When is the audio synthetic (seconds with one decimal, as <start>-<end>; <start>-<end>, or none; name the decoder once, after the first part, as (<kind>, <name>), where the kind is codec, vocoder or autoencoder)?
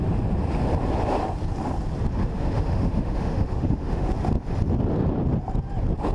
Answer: 2.2-4.1 (autoencoder, DAC-VAE)